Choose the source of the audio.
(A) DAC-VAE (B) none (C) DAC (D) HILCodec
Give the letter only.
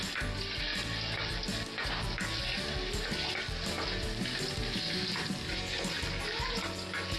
B